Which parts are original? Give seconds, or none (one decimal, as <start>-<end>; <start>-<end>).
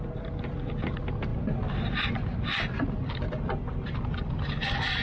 0.0-5.0